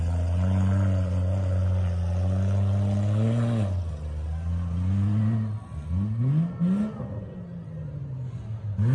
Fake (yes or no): no